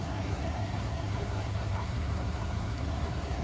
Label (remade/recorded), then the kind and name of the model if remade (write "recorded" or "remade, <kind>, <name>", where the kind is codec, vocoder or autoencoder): remade, codec, SNAC